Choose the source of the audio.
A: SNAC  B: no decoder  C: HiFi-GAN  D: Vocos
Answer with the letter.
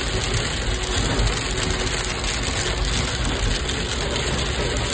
B